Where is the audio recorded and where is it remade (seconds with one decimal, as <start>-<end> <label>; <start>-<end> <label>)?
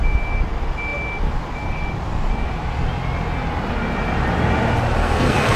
0.0-5.0 recorded; 5.0-5.6 remade